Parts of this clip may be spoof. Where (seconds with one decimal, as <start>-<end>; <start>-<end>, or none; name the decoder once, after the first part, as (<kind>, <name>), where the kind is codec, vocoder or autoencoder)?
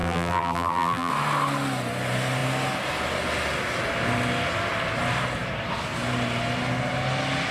0.0-1.1 (vocoder, BigVGAN v2)